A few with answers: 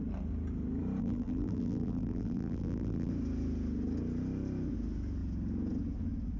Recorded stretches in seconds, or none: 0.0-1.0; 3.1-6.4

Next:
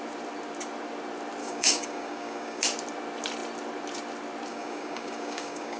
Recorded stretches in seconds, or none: 0.0-1.4; 2.6-4.5

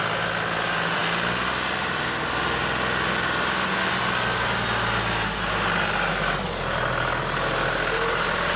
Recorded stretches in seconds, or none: 0.0-8.6

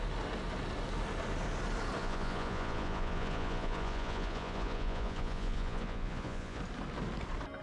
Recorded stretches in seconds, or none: 0.0-2.0; 6.6-7.6

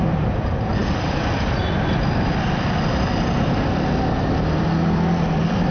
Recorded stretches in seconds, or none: 0.0-5.7